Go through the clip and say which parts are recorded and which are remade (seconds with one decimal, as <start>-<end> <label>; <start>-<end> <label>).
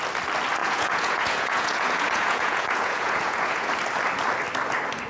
0.0-0.6 recorded; 0.6-3.7 remade; 3.7-5.1 recorded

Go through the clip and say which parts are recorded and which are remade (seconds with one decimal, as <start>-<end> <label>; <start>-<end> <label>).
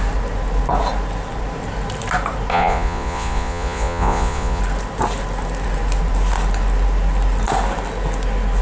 0.0-2.5 recorded; 2.5-4.6 remade; 4.6-8.6 recorded